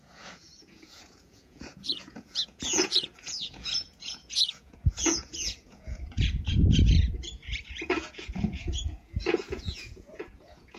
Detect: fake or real fake